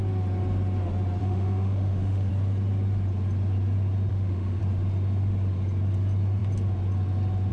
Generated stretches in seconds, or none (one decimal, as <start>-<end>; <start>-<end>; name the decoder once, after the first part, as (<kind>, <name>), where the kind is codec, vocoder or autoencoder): 1.2-2.3 (autoencoder, DAC-VAE); 4.1-4.6